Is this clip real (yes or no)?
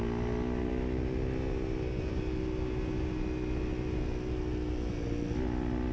yes